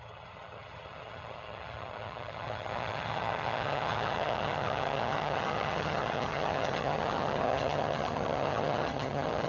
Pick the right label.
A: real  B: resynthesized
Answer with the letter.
B